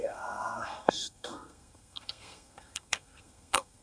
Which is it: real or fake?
fake